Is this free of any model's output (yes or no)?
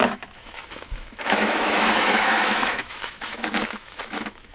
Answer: no